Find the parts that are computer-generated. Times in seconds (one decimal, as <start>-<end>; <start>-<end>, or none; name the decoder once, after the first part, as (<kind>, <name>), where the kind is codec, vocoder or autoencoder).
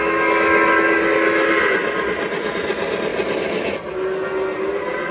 none